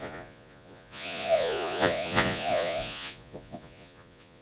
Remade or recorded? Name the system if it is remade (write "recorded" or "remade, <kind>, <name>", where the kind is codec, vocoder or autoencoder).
remade, vocoder, Vocos